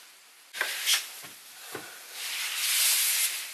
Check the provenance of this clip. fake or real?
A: real